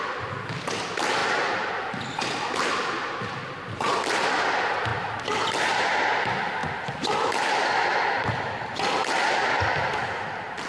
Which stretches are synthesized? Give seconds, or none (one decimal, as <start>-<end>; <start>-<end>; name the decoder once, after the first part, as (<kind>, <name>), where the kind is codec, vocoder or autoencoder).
none